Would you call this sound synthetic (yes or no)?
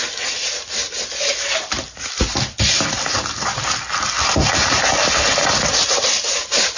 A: no